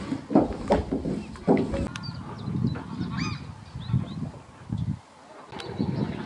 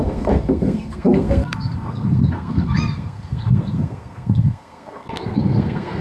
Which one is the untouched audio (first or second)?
first